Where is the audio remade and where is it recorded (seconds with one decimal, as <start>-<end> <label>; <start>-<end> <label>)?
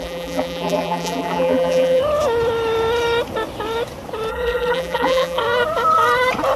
0.0-2.0 remade; 2.0-4.3 recorded; 4.3-5.4 remade; 5.4-6.6 recorded